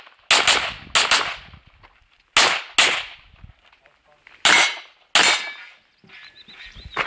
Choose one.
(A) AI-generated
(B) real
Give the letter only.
B